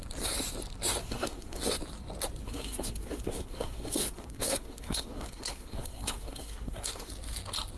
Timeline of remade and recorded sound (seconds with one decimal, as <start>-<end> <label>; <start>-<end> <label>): 0.0-1.0 recorded; 1.0-1.6 remade; 1.6-2.4 recorded; 2.4-7.1 remade; 7.1-7.8 recorded